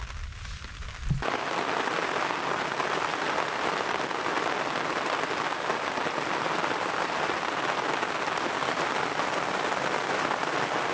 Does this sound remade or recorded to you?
recorded